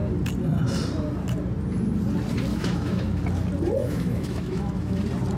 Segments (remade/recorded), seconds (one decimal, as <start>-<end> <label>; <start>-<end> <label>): 0.0-2.5 recorded; 2.5-3.2 remade; 3.2-3.8 recorded; 3.8-5.0 remade; 5.0-5.4 recorded

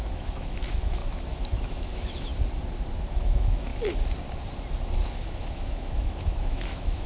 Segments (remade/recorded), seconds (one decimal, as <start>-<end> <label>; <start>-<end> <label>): 0.0-2.3 remade; 2.3-3.1 recorded; 3.1-3.7 remade; 3.7-5.1 recorded; 5.1-7.1 remade

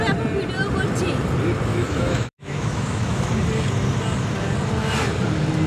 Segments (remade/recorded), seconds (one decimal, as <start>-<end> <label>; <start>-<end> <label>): 0.0-1.7 recorded; 1.7-3.3 remade; 3.3-5.7 recorded

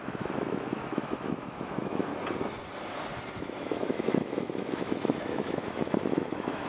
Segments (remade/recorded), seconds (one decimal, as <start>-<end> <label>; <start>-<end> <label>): 0.0-2.1 remade; 2.1-3.4 recorded; 3.4-6.7 remade

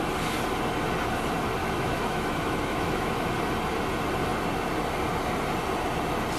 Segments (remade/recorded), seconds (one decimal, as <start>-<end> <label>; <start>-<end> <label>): 0.0-1.6 recorded; 1.6-3.3 remade; 3.3-6.4 recorded